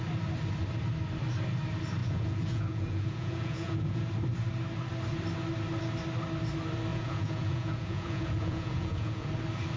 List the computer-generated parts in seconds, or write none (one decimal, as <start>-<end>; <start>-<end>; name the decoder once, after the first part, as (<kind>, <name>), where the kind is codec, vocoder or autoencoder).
2.0-4.0 (vocoder, Vocos); 6.9-9.3